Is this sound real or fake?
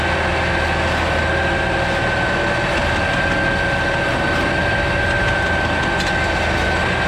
real